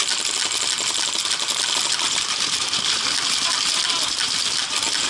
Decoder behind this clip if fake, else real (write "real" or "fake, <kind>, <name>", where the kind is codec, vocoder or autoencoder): real